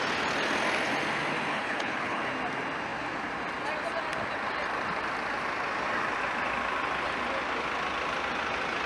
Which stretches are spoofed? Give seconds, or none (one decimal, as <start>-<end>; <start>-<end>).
1.5-2.2